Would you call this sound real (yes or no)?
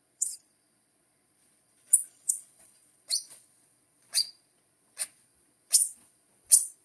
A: no